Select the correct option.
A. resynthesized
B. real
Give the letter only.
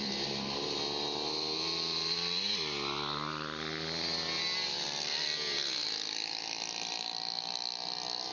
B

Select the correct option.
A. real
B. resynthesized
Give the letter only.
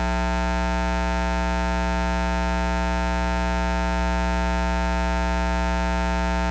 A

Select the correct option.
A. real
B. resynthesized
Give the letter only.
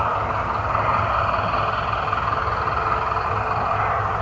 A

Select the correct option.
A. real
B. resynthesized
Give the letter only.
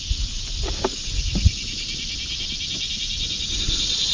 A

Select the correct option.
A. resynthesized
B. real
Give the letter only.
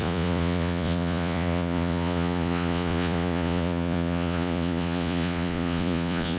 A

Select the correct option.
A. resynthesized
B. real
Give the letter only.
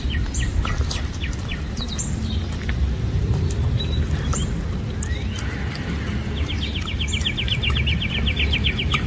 B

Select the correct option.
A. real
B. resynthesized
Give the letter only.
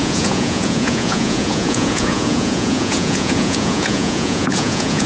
B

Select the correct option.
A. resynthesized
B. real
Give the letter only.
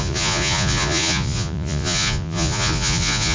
A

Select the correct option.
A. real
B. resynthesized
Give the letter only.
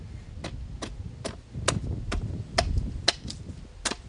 A